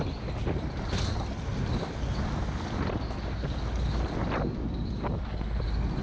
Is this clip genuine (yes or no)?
yes